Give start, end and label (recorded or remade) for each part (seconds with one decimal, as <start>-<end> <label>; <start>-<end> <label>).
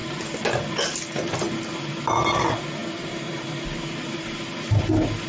0.0-5.3 recorded